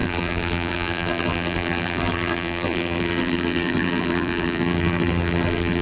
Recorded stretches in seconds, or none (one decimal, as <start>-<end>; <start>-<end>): none